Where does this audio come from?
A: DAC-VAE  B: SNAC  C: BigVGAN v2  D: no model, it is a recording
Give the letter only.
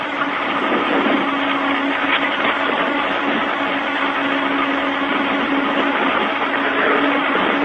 D